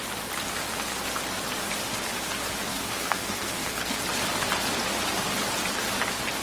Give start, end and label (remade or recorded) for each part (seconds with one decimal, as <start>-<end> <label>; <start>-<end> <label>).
0.0-2.7 recorded; 2.7-4.0 remade; 4.0-6.4 recorded